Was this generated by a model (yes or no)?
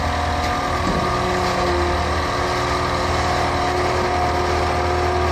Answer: no